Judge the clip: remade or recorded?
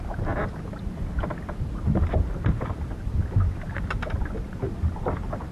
recorded